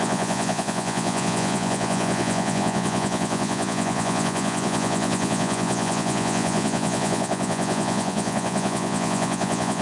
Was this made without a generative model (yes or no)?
no